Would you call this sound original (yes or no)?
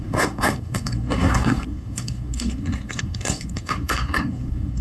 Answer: no